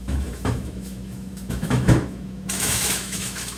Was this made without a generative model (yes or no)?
no